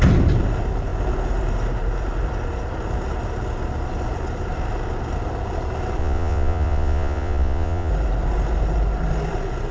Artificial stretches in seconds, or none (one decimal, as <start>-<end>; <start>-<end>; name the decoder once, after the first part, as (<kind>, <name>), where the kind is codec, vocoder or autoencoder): 6.0-7.9 (vocoder, Vocos)